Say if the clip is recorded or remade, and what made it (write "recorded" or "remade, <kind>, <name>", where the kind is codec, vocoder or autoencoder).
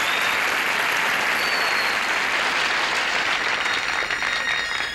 recorded